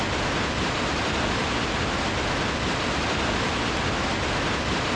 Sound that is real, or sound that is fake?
real